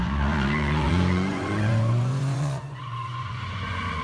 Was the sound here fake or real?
fake